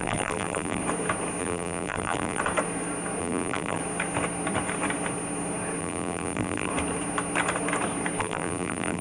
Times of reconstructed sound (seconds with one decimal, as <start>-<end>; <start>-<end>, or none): 0.0-0.8; 1.4-2.4; 3.2-3.8; 5.8-6.7; 8.2-9.0